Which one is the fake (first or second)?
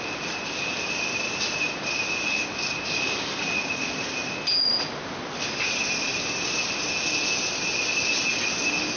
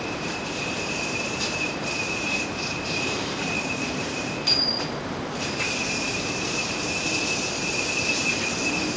second